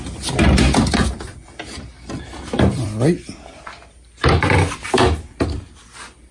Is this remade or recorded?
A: recorded